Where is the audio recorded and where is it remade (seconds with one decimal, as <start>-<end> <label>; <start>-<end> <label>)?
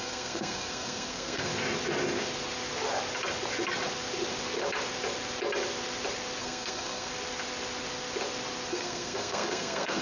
0.0-1.5 remade; 1.5-6.4 recorded; 6.4-7.1 remade; 7.1-8.7 recorded; 8.7-10.0 remade